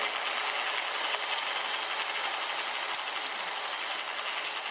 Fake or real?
real